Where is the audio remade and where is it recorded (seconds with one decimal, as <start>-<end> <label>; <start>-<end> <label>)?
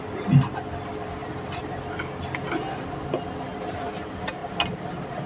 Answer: 0.0-5.3 recorded